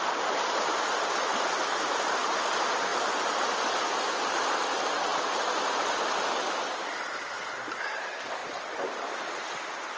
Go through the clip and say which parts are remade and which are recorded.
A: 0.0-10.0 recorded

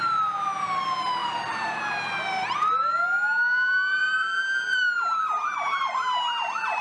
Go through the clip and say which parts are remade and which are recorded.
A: 0.0-1.2 recorded; 1.2-1.8 remade; 1.8-3.9 recorded; 3.9-4.8 remade; 4.8-5.4 recorded; 5.4-5.9 remade; 5.9-6.8 recorded

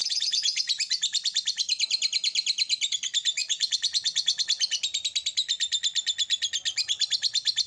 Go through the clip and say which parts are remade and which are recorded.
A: 0.0-0.6 remade; 0.6-3.4 recorded; 3.4-4.4 remade; 4.4-7.7 recorded

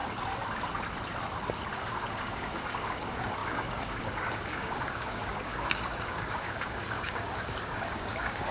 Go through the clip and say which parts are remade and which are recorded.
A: 0.0-2.1 recorded; 2.1-8.5 remade

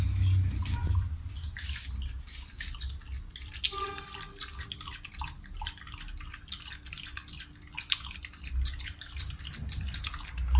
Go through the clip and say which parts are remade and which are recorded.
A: 0.0-10.6 recorded

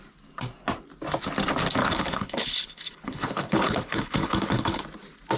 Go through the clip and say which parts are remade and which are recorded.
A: 0.0-1.8 recorded; 1.8-4.8 remade; 4.8-5.4 recorded

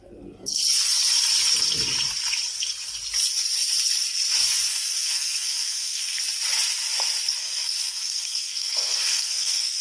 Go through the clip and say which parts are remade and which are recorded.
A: 0.0-0.6 remade; 0.6-4.7 recorded; 4.7-6.2 remade; 6.2-7.4 recorded; 7.4-9.8 remade

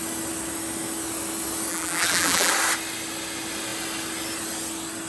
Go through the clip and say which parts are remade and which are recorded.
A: 0.0-1.7 recorded; 1.7-2.5 remade; 2.5-5.1 recorded